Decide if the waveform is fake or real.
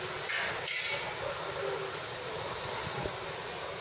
real